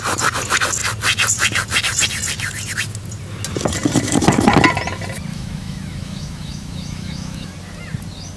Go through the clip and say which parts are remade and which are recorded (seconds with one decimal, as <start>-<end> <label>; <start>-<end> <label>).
0.0-5.3 recorded; 5.3-7.5 remade; 7.5-8.4 recorded